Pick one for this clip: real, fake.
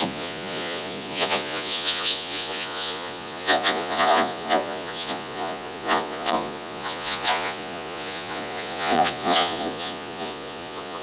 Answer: fake